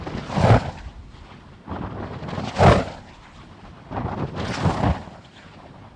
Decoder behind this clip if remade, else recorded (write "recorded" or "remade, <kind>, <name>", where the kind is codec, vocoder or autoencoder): recorded